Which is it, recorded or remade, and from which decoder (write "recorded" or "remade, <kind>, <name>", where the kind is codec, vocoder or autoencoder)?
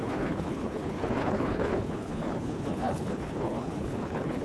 remade, codec, HILCodec